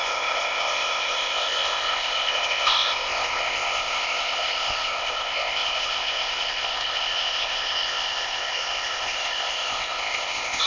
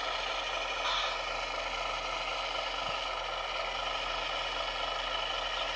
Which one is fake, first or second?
first